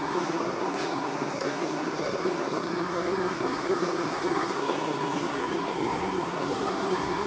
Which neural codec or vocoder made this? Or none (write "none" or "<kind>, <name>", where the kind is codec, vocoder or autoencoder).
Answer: codec, SNAC